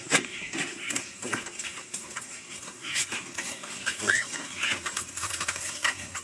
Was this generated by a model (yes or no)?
yes